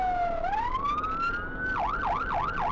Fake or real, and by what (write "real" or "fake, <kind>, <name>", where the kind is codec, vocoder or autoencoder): real